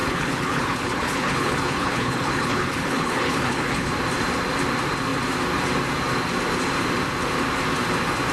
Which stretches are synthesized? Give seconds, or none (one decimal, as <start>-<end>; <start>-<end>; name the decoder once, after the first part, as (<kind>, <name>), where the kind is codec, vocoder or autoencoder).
0.0-3.9 (codec, HILCodec)

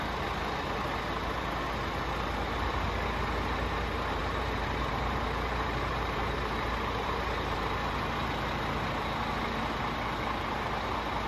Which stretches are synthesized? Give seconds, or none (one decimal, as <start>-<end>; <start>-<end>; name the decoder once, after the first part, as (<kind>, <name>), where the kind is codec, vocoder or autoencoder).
4.2-8.5 (vocoder, BigVGAN v2)

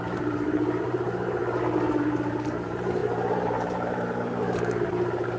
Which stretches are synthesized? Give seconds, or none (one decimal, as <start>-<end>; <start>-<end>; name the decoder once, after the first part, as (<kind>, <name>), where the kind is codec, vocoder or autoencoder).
0.0-1.4 (vocoder, BigVGAN v2); 2.0-5.4

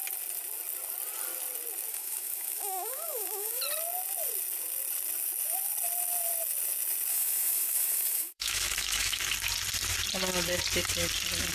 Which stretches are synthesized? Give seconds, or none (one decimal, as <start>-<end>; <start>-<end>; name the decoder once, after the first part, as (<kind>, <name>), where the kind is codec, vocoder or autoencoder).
1.9-3.6 (autoencoder, DAC-VAE); 7.1-9.2

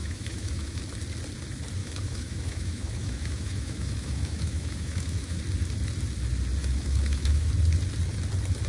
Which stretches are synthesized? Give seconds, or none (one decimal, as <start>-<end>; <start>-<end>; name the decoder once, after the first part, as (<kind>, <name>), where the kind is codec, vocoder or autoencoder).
0.0-0.8 (autoencoder, DAC-VAE); 1.8-5.4; 6.6-7.5

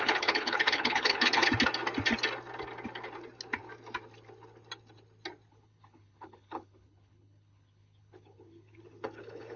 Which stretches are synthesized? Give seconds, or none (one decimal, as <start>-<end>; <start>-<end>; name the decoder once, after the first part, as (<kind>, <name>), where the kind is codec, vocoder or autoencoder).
0.0-1.5 (codec, HILCodec); 5.5-9.6

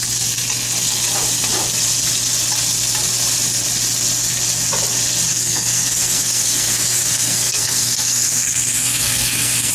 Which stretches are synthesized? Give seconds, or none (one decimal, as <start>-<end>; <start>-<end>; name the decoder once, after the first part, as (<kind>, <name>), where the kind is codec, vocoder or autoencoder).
5.3-9.7 (codec, SNAC)

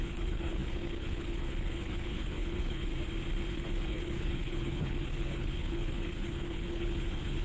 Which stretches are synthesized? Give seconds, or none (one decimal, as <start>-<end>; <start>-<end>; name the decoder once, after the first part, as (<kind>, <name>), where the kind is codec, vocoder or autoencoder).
0.0-2.9 (codec, HILCodec); 3.5-7.4